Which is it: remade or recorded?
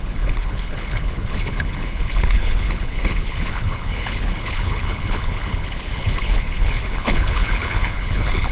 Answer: remade